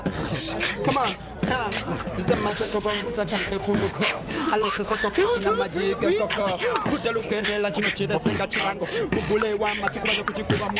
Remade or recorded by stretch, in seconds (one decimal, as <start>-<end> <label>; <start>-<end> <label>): 0.0-2.5 recorded; 2.5-5.4 remade; 5.4-7.2 recorded; 7.2-7.8 remade; 7.8-10.8 recorded